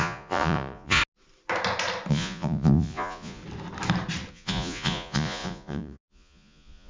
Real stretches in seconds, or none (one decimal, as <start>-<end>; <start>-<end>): 1.0-2.1; 3.4-4.3